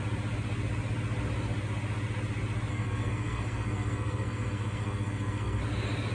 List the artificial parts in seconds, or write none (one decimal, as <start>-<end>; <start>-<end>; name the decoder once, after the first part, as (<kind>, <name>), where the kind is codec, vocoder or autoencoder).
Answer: 2.7-5.6 (codec, SNAC)